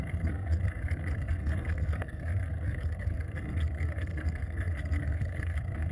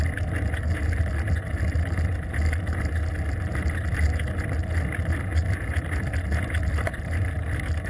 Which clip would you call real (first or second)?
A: second